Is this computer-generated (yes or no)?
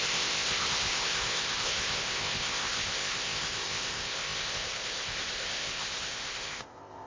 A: yes